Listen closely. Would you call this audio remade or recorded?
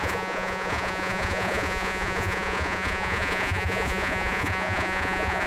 remade